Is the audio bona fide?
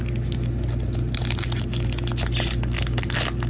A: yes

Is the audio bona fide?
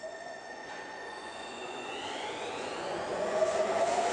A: no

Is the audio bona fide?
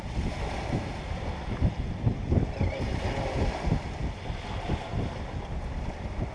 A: yes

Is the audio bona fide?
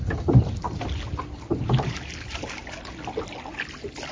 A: yes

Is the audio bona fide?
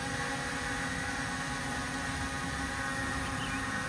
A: yes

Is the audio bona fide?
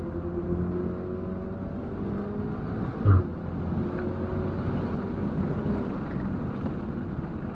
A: yes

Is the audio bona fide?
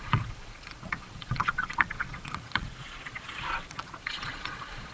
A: no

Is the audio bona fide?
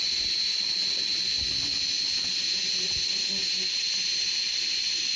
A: yes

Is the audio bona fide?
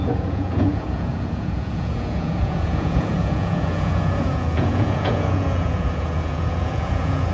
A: no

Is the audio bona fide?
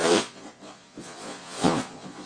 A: no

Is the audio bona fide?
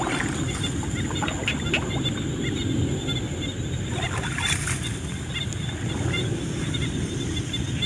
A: yes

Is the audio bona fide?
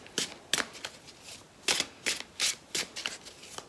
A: yes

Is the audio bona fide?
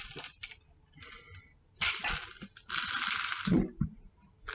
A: yes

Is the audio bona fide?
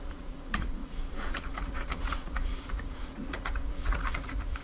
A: no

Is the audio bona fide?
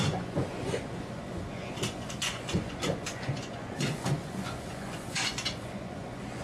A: no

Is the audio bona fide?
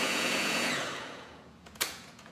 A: no